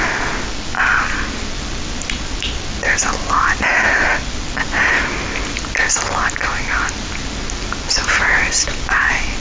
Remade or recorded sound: recorded